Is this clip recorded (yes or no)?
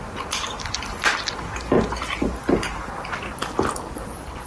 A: yes